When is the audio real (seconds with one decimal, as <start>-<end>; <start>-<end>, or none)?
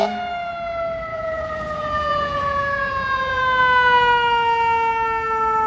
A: 0.0-1.1; 3.4-5.7